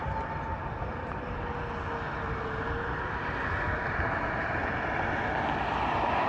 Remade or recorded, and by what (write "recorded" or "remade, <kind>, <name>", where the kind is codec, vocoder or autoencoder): recorded